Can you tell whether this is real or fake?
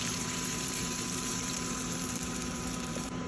fake